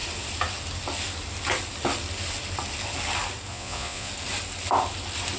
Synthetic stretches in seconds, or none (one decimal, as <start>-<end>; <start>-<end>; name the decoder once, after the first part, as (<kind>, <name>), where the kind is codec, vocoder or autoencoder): 3.5-4.1 (vocoder, Vocos)